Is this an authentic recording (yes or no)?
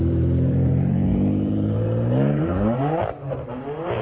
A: no